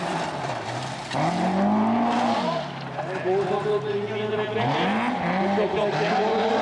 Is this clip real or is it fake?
real